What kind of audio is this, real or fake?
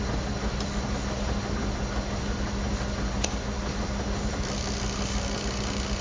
real